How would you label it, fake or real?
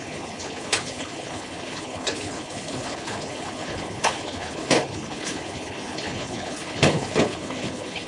fake